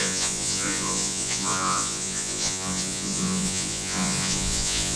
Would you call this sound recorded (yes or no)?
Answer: no